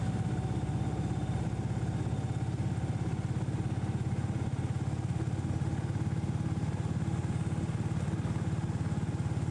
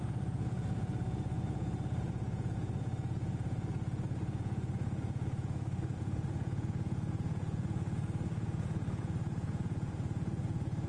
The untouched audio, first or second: first